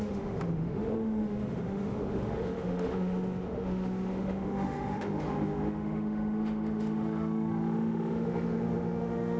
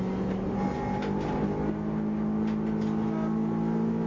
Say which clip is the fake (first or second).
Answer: first